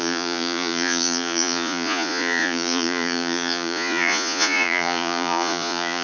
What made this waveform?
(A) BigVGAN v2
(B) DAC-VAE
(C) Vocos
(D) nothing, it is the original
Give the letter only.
C